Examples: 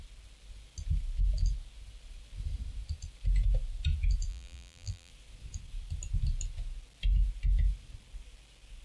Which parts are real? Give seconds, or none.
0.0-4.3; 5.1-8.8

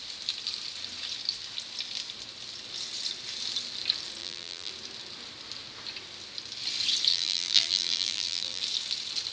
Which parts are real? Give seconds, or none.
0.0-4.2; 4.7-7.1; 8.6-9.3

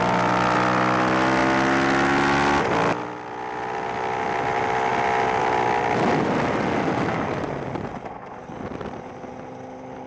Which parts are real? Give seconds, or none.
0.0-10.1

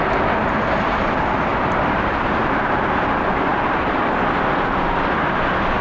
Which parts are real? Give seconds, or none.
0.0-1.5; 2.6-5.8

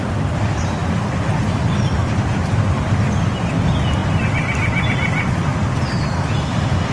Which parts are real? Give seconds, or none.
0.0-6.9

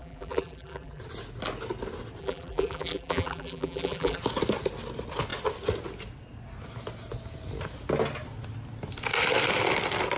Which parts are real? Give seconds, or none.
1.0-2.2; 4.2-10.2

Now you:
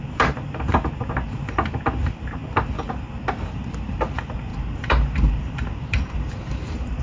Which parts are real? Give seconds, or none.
0.0-4.5

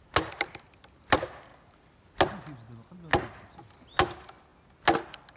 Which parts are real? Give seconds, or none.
0.0-5.4